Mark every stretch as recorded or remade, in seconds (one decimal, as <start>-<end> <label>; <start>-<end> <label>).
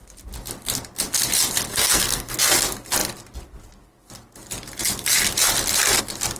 0.0-1.7 recorded; 1.7-2.4 remade; 2.4-6.4 recorded